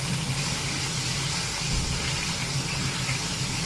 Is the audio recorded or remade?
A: recorded